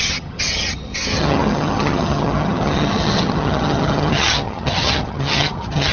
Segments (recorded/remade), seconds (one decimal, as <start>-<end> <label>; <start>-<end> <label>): 0.0-5.9 remade